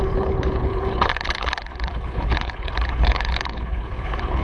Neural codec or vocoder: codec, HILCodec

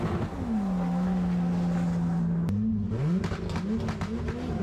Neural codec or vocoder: none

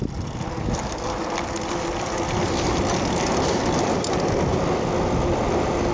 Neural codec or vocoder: none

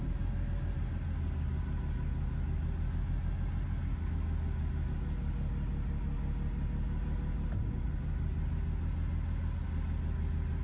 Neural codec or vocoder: none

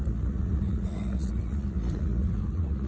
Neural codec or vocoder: vocoder, Vocos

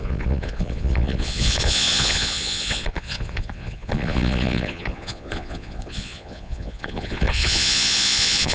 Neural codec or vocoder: vocoder, Vocos